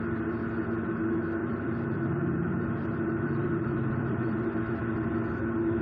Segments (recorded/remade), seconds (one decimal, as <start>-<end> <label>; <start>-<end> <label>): 0.0-1.4 recorded; 1.4-4.4 remade; 4.4-5.8 recorded